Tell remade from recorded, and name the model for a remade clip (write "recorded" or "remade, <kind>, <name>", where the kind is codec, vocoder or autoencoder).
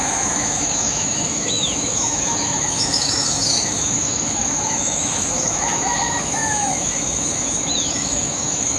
remade, autoencoder, DAC-VAE